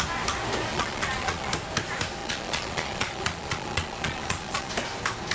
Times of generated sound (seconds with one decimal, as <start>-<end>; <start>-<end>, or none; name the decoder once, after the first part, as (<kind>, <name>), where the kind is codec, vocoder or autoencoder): 0.7-1.5 (vocoder, Vocos); 2.2-4.7